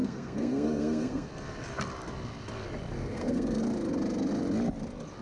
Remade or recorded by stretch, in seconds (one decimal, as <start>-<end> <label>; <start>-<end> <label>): 0.0-1.3 remade; 1.3-3.0 recorded; 3.0-3.6 remade; 3.6-5.2 recorded